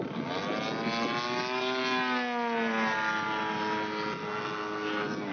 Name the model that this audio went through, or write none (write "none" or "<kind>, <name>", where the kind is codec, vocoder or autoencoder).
none